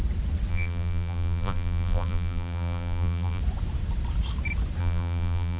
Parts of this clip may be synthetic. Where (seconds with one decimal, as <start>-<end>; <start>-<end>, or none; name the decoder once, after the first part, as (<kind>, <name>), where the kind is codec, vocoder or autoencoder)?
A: 0.5-3.4 (vocoder, BigVGAN v2); 4.8-5.6